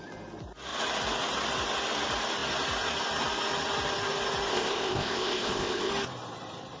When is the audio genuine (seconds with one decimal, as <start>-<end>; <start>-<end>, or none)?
0.0-4.5; 5.9-6.8